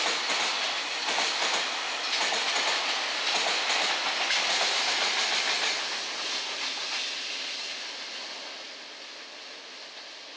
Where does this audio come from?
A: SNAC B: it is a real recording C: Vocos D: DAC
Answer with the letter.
B